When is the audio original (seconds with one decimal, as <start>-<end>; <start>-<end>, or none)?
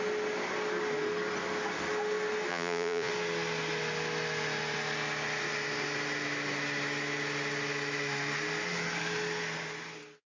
0.0-2.5; 3.1-10.3